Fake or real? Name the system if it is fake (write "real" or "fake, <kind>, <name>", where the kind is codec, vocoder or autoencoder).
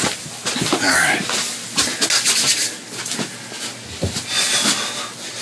real